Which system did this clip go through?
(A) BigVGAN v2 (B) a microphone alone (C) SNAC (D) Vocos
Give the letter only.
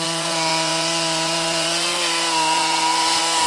D